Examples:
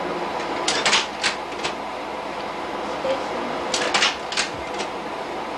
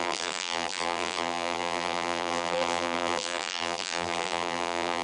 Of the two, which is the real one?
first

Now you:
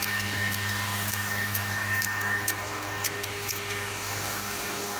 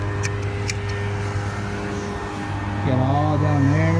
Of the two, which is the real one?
second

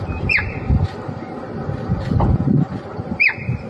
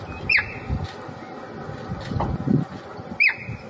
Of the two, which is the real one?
second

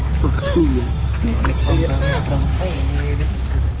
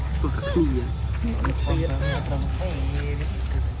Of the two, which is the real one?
second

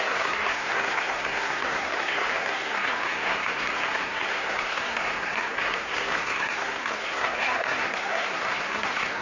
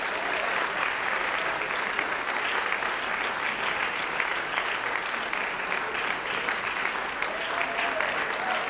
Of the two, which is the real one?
second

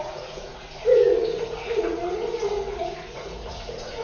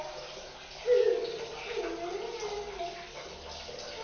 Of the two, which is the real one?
second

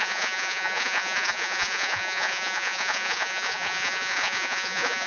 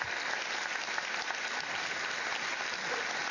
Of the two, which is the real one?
second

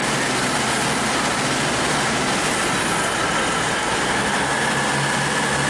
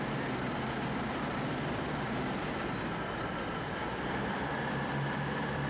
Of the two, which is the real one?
first